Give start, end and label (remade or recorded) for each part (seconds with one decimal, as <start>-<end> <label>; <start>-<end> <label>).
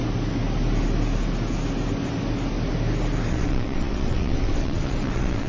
0.0-3.3 recorded; 3.3-5.5 remade